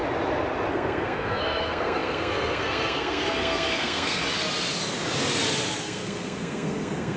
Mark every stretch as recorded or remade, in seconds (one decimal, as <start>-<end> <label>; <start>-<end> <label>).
0.0-0.7 recorded; 0.7-4.2 remade; 4.2-5.8 recorded; 5.8-7.2 remade